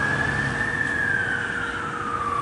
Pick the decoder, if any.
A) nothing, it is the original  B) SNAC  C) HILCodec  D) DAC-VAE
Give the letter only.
A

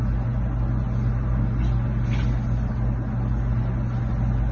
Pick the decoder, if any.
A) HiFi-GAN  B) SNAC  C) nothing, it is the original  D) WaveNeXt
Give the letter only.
C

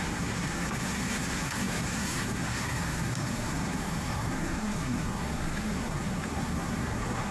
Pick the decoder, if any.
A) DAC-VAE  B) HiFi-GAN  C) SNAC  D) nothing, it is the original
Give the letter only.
C